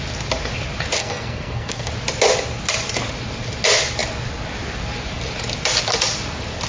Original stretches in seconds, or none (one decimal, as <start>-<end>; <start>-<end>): 0.0-1.0; 1.9-6.7